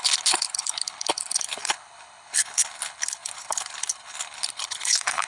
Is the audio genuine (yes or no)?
no